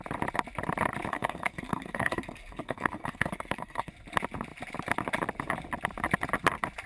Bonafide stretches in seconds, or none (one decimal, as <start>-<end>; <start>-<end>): 0.0-1.1; 3.9-6.9